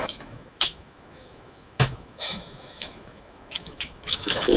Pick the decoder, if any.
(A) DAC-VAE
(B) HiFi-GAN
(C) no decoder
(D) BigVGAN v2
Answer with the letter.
A